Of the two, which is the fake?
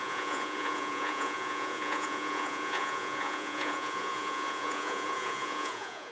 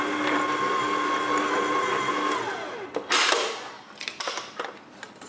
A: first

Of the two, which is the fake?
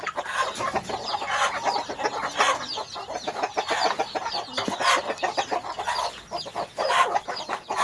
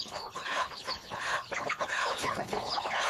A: second